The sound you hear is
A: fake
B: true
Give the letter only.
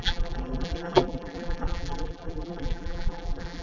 A